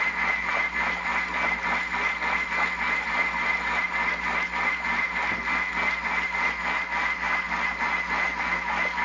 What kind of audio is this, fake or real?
real